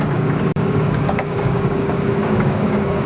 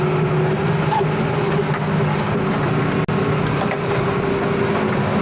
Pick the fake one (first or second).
first